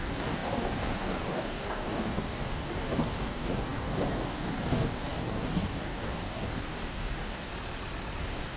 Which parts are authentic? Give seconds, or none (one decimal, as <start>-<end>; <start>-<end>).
7.5-8.2